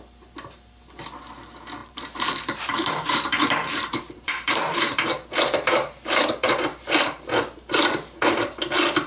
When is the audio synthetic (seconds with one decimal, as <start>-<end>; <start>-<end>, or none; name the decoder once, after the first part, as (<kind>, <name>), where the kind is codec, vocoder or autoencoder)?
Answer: 1.8-7.0 (vocoder, BigVGAN v2)